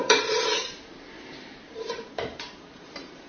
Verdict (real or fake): fake